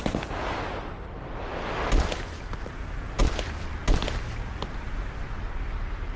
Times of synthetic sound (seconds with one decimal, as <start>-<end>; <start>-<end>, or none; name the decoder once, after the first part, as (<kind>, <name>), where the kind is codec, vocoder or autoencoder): none